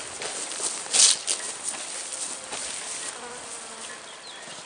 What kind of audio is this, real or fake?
real